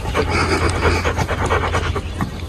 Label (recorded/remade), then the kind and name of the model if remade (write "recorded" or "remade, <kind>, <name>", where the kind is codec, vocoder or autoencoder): remade, vocoder, BigVGAN v2